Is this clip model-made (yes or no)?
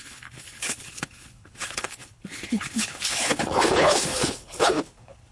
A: yes